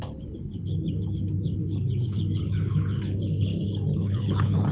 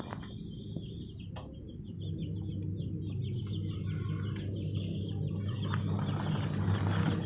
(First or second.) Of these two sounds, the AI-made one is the first